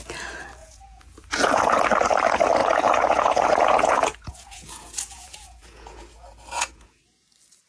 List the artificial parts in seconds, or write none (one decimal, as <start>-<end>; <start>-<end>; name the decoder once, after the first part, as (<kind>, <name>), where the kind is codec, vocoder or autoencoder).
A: 0.6-1.8 (vocoder, Vocos); 2.6-7.0